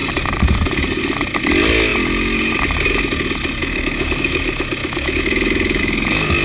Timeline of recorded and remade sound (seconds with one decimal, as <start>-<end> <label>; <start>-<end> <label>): 0.0-3.6 recorded; 3.6-5.8 remade; 5.8-6.4 recorded